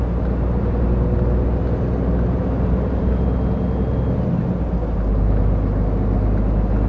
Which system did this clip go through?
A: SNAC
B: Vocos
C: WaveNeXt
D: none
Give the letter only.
D